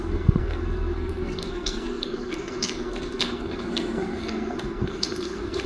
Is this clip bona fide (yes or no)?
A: no